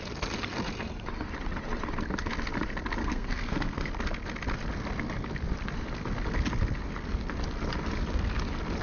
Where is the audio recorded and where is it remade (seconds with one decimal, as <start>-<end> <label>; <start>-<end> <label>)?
0.0-3.0 recorded; 3.0-3.9 remade; 3.9-8.8 recorded